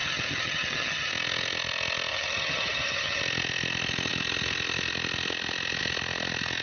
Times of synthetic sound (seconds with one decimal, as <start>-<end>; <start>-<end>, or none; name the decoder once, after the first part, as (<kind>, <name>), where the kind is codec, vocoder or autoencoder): 0.0-1.1 (vocoder, HiFi-GAN); 2.1-3.2